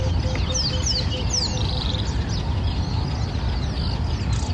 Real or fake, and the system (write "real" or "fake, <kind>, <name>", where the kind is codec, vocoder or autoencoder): real